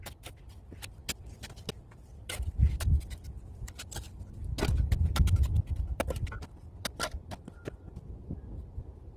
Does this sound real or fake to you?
fake